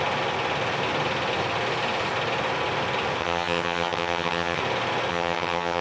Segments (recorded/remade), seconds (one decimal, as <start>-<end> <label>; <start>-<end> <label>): 0.0-3.2 recorded; 3.2-4.6 remade; 4.6-5.1 recorded; 5.1-5.8 remade